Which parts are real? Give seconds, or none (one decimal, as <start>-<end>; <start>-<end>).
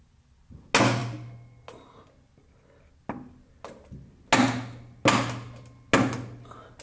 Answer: 0.0-6.8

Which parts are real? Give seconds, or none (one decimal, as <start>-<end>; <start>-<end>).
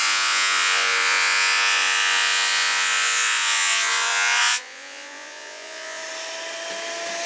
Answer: 6.0-7.3